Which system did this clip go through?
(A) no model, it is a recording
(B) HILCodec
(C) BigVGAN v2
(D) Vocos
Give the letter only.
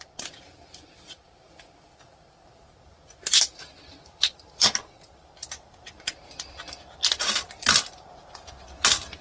A